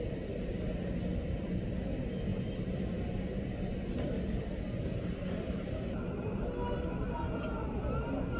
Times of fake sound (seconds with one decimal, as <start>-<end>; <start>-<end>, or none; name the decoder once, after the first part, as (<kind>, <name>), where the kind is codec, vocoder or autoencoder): none